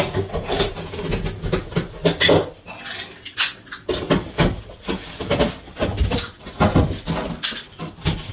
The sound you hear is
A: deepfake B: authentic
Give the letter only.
B